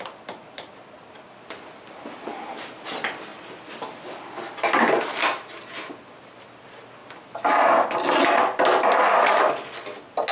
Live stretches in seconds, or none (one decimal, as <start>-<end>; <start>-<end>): 0.0-10.3